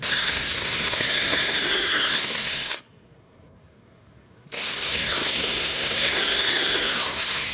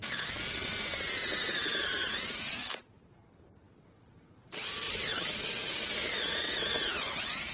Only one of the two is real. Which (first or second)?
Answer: second